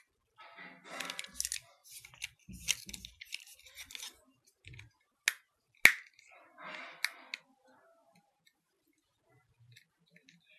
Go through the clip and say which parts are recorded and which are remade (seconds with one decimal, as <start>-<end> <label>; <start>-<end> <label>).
0.0-10.6 recorded